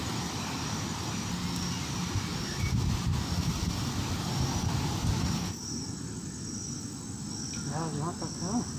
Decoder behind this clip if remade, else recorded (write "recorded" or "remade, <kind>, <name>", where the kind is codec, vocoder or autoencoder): recorded